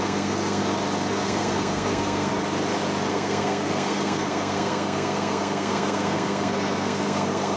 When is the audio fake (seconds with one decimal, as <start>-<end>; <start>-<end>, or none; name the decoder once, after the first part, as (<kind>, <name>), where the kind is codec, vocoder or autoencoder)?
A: 0.0-0.6 (codec, SNAC); 1.1-2.3; 3.1-7.6